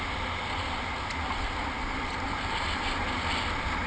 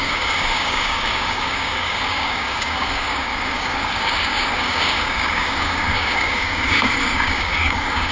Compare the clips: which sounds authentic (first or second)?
first